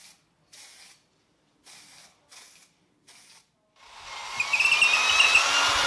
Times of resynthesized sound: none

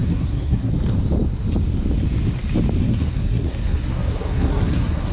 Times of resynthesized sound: 0.0-0.7 (codec, SNAC); 2.8-5.1

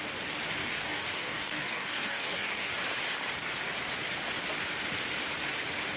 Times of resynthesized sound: 0.6-2.7 (codec, DAC)

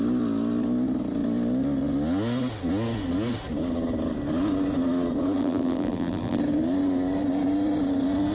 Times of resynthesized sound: 5.4-6.4 (vocoder, BigVGAN v2)